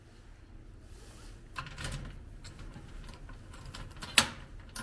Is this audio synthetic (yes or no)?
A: no